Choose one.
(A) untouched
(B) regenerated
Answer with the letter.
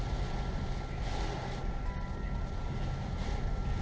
A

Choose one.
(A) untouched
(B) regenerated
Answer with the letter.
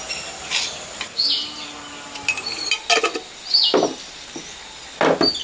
A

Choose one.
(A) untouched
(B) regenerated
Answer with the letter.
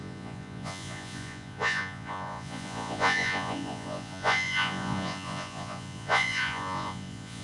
B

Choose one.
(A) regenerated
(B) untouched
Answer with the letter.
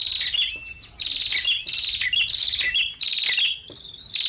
B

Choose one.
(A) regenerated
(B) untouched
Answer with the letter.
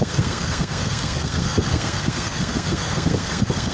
A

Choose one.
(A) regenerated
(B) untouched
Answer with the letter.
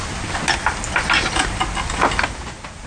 B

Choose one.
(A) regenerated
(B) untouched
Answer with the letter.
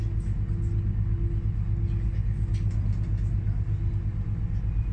B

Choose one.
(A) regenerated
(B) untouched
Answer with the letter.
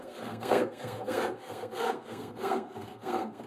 A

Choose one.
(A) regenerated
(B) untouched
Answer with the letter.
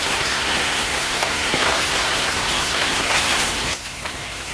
A